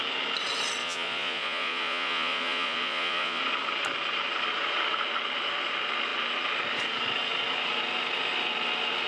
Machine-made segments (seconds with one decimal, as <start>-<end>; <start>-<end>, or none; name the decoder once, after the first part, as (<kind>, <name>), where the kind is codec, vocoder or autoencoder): 0.8-3.4 (vocoder, Vocos)